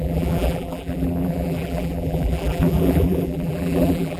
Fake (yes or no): yes